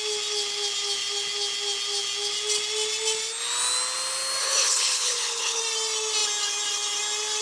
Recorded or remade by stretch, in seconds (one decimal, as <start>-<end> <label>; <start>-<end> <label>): 0.0-4.4 recorded; 4.4-5.6 remade; 5.6-7.4 recorded